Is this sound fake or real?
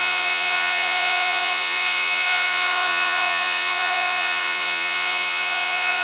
fake